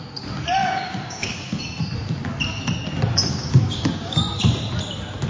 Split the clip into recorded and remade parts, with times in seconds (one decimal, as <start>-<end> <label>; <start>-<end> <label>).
0.0-0.6 recorded; 0.6-1.6 remade; 1.6-3.3 recorded; 3.3-4.4 remade; 4.4-5.3 recorded